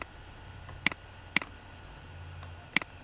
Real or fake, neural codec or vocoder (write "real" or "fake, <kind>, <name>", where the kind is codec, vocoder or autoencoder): real